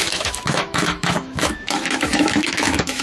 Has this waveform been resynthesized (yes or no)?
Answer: yes